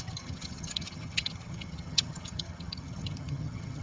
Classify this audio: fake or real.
fake